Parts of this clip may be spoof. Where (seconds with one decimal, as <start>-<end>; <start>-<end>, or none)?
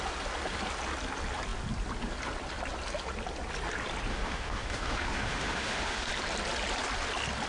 4.1-6.1